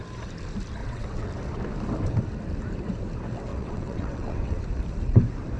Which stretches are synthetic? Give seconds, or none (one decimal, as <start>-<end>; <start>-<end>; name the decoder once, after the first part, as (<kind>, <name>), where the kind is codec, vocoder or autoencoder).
0.8-1.3 (vocoder, WaveNeXt); 3.5-4.6